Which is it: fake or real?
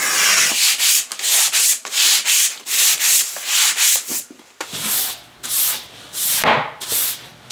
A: real